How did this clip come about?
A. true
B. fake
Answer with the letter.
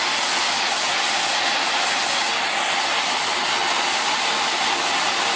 A